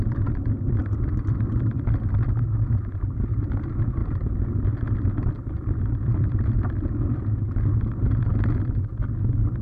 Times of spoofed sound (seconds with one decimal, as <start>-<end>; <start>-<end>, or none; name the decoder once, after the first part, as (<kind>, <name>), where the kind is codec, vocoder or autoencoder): 0.8-2.0 (vocoder, BigVGAN v2); 4.0-6.9

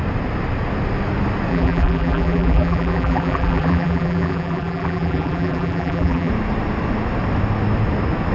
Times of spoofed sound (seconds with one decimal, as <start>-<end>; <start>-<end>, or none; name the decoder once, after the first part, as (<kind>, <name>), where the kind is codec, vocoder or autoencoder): 1.5-6.3 (vocoder, BigVGAN v2)

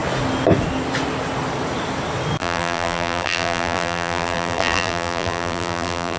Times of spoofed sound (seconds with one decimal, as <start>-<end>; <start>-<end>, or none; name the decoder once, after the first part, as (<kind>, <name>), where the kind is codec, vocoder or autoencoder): 2.4-6.2 (vocoder, BigVGAN v2)

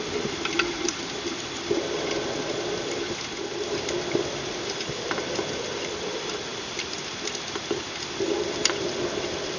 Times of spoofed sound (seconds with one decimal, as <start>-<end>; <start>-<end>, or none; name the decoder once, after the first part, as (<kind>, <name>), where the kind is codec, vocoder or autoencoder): none